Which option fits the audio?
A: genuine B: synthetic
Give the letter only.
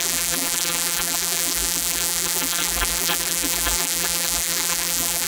B